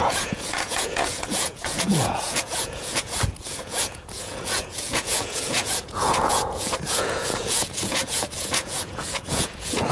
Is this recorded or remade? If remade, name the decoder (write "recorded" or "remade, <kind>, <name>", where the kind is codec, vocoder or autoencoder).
remade, vocoder, Vocos